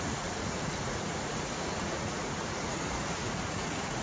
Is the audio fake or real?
fake